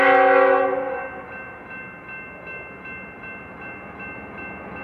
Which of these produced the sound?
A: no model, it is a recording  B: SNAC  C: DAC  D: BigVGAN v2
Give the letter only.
A